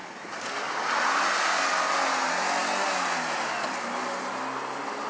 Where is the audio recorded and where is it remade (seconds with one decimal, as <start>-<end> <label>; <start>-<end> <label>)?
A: 0.0-5.1 recorded